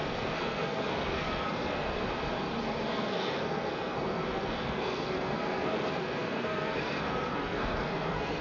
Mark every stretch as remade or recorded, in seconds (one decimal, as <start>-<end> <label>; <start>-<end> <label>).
0.0-2.0 remade; 2.0-2.6 recorded; 2.6-8.4 remade